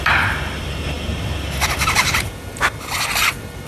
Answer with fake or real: fake